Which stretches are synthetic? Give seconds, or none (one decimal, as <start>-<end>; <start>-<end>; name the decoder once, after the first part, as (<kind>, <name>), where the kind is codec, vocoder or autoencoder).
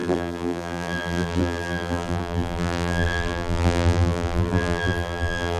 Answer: 0.0-5.6 (vocoder, BigVGAN v2)